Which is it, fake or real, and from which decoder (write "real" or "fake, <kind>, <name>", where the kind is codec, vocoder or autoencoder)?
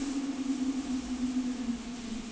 real